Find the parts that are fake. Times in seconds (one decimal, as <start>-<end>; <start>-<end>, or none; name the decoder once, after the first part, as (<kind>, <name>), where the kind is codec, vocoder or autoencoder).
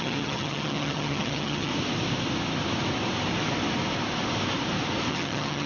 0.0-1.7 (vocoder, HiFi-GAN); 5.1-5.7